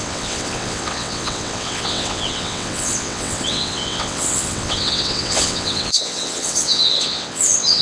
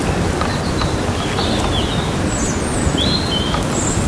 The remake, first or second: first